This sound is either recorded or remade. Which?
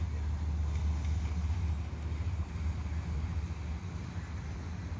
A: recorded